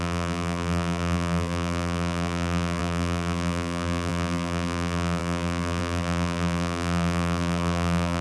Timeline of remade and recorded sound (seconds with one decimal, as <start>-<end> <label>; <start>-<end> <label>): 0.0-8.2 remade